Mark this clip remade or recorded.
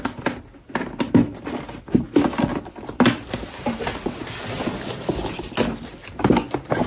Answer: recorded